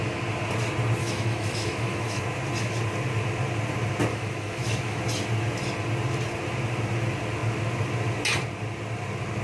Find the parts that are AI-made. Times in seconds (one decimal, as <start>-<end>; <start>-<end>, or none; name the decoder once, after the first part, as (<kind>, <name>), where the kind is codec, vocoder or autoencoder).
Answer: 1.0-2.2 (autoencoder, DAC-VAE); 4.1-5.0